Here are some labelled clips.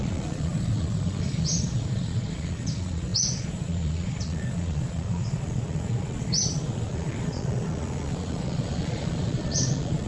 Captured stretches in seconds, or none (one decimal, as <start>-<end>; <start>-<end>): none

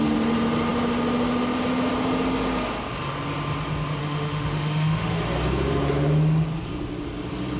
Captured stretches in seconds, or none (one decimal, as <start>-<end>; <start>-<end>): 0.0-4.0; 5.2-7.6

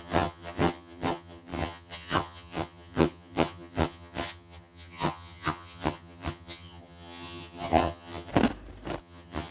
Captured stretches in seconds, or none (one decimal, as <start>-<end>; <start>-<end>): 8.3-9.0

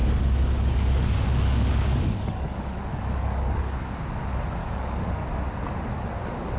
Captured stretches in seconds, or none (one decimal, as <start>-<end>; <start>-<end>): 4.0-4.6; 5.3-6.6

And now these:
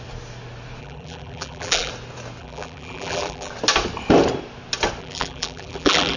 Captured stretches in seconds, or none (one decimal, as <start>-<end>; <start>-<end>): 0.0-0.8; 1.9-2.4; 3.5-5.0